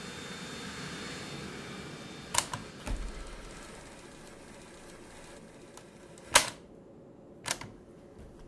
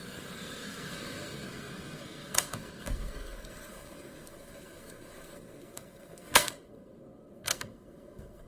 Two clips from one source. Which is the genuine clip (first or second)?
first